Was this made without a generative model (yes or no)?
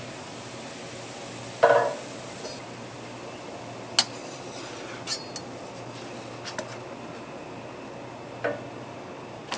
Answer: yes